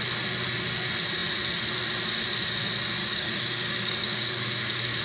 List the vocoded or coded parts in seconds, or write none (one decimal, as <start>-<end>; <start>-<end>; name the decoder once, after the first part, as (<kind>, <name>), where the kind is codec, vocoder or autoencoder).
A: 3.0-5.0 (codec, DAC)